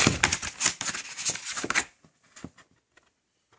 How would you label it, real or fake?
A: real